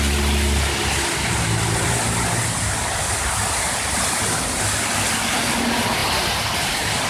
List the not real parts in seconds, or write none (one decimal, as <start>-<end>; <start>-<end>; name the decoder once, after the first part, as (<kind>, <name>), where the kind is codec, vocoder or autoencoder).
none